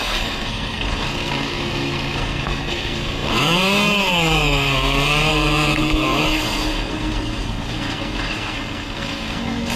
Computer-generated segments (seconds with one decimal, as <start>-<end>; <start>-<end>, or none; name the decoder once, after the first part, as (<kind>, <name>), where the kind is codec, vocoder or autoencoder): 0.0-9.8 (codec, SNAC)